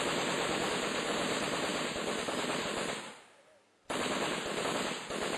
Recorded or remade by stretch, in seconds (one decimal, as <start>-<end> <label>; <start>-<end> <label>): 0.0-5.4 recorded